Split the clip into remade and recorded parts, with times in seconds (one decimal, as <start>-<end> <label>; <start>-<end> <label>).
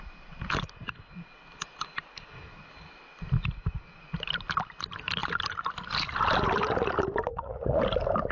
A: 0.0-7.3 recorded; 7.3-7.8 remade; 7.8-8.3 recorded